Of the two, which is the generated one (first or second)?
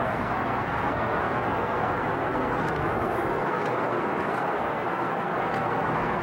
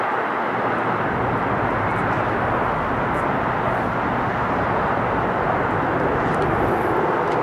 first